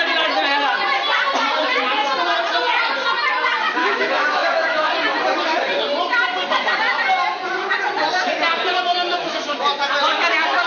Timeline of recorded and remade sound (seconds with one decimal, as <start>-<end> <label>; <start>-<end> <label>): 0.0-3.8 recorded; 3.8-4.9 remade; 4.9-9.1 recorded; 9.1-9.6 remade; 9.6-10.7 recorded